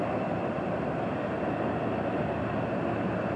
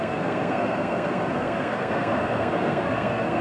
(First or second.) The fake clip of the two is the second